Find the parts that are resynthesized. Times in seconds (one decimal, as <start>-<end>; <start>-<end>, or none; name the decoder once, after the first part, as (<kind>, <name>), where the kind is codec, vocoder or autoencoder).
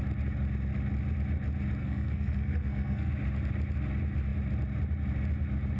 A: 1.8-3.1 (codec, SNAC)